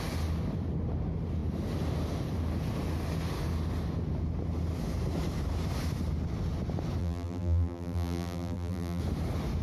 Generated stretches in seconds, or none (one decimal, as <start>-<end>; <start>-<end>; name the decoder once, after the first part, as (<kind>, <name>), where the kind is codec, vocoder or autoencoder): 7.0-9.0 (vocoder, BigVGAN v2)